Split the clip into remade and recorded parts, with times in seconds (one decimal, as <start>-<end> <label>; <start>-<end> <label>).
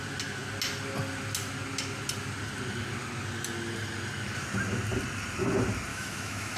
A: 0.0-5.9 recorded; 5.9-6.6 remade